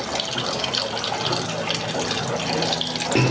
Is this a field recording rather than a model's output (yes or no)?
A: yes